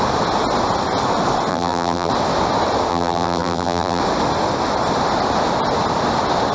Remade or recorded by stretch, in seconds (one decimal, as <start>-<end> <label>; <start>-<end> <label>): 0.0-1.5 recorded; 1.5-2.1 remade; 2.1-2.9 recorded; 2.9-4.0 remade; 4.0-6.5 recorded